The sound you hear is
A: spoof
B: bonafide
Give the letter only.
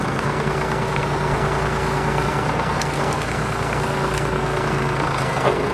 A